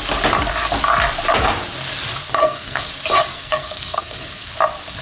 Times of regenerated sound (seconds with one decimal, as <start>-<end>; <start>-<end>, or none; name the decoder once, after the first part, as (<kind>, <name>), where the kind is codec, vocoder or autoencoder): 2.4-2.9 (codec, SNAC); 3.3-4.5